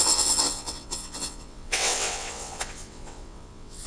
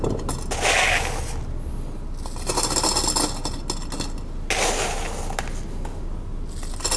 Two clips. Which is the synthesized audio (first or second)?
first